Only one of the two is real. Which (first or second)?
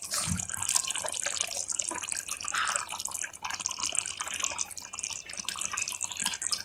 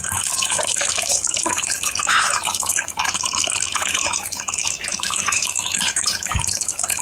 first